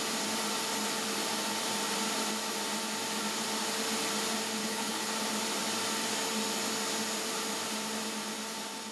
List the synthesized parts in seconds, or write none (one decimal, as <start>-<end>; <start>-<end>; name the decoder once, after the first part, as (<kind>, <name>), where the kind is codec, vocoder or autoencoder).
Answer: 4.6-5.1 (codec, HILCodec)

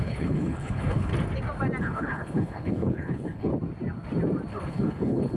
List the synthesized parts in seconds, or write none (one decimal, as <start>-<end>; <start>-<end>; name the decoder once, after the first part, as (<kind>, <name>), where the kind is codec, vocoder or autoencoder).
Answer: 0.0-1.1 (codec, HILCodec); 1.8-3.5; 4.5-5.4